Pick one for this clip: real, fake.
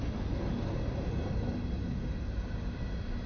real